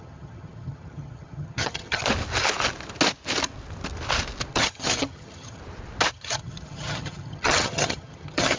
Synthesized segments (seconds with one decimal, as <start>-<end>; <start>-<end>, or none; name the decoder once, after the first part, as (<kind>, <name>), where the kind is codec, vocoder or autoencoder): 0.0-2.0 (vocoder, HiFi-GAN); 4.5-5.6; 6.1-8.6